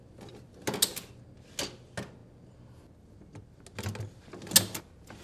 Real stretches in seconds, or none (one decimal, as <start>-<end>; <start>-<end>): 0.0-5.2